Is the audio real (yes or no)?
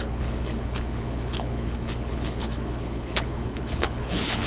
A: no